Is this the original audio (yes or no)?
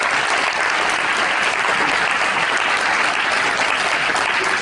yes